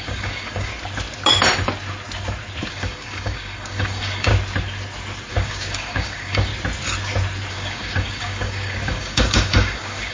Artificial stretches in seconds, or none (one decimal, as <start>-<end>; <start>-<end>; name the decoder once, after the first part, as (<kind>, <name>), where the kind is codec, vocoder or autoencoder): 0.0-0.7 (codec, DAC); 2.7-4.3; 5.3-6.5; 7.5-10.1